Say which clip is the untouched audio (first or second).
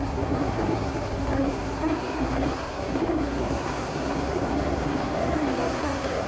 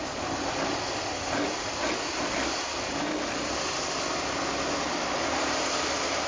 second